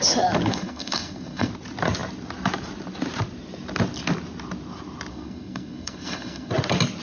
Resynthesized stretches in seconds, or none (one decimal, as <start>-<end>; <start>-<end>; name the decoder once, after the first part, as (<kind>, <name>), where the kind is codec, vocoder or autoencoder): 0.5-1.5 (codec, SNAC); 5.1-6.5